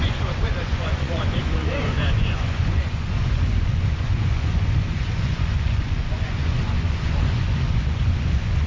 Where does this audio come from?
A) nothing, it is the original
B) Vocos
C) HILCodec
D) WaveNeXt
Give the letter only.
B